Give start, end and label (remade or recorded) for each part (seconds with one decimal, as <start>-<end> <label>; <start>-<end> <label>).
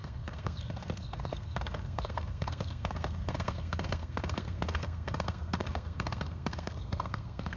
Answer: 0.0-7.6 remade